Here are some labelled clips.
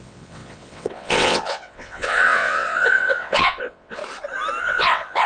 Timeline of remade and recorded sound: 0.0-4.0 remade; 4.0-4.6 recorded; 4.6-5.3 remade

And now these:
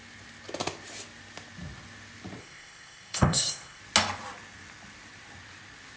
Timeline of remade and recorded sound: 0.0-2.4 recorded; 2.4-3.8 remade; 3.8-6.0 recorded

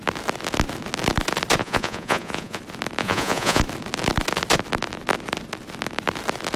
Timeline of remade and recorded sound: 0.0-1.6 recorded; 1.6-2.6 remade; 2.6-3.0 recorded; 3.0-3.6 remade; 3.6-6.6 recorded

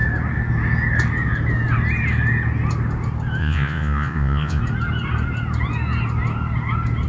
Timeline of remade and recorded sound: 0.0-3.4 recorded; 3.4-4.6 remade; 4.6-7.1 recorded

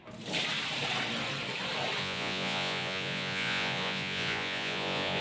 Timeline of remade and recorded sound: 0.0-2.0 recorded; 2.0-5.2 remade

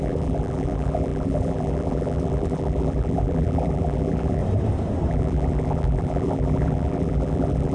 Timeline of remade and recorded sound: 0.0-4.4 remade; 4.4-5.1 recorded; 5.1-7.7 remade